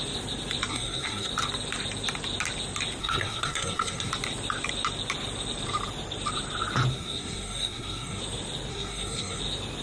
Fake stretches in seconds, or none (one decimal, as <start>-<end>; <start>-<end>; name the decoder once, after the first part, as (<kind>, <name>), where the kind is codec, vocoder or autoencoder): 0.7-1.3 (codec, SNAC); 3.0-4.1; 6.9-8.2; 8.7-9.4